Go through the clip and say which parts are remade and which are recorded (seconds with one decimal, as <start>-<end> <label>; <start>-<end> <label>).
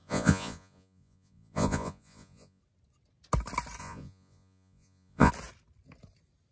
0.0-2.6 remade; 2.6-3.8 recorded; 3.8-5.3 remade; 5.3-6.5 recorded